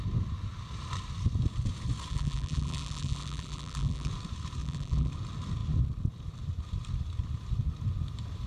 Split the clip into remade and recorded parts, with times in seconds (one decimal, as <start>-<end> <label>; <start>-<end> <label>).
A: 0.0-2.1 recorded; 2.1-4.1 remade; 4.1-4.6 recorded; 4.6-5.1 remade; 5.1-8.5 recorded